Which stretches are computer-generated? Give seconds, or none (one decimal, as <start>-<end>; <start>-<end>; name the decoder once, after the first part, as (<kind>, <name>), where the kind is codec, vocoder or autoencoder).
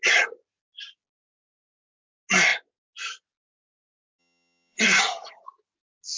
4.2-5.4 (vocoder, HiFi-GAN)